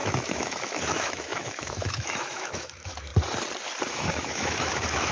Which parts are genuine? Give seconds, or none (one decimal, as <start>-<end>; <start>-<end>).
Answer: 3.1-3.9